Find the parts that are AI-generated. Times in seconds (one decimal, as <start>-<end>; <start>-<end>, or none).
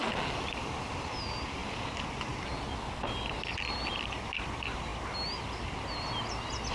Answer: none